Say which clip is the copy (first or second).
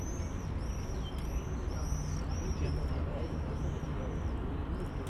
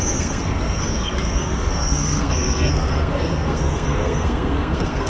second